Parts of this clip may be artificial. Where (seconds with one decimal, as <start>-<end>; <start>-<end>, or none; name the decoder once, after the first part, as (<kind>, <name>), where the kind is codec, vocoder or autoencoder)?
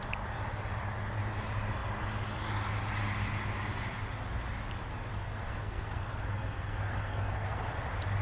4.9-7.7 (codec, SNAC)